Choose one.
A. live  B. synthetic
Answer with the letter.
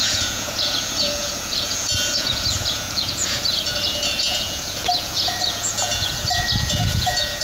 B